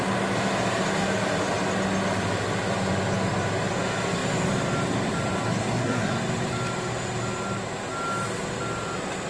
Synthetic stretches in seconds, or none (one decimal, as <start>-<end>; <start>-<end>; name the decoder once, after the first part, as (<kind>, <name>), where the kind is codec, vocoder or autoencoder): 5.6-6.1 (codec, SNAC)

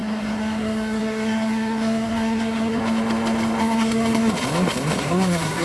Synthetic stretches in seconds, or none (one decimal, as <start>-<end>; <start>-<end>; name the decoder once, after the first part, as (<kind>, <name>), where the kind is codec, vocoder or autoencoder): 0.0-2.8 (codec, SNAC); 3.6-4.3; 5.0-5.6

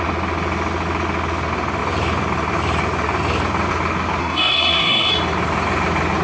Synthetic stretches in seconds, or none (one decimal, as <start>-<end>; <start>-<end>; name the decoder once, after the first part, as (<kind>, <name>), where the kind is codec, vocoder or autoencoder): 4.2-5.1 (codec, SNAC)

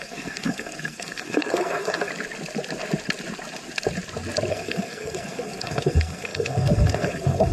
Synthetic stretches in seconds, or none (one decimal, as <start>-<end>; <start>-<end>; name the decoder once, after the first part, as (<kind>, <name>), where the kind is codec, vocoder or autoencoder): 0.0-2.1 (codec, SNAC); 4.5-7.5